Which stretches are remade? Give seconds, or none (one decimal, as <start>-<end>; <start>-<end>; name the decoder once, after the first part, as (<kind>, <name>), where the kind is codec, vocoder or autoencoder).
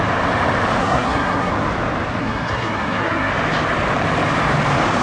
0.8-1.5 (codec, SNAC); 2.2-3.3